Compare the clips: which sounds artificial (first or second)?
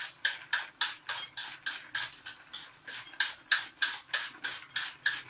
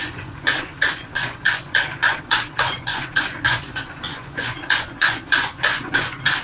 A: second